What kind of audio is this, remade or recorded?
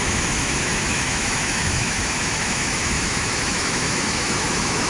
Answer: remade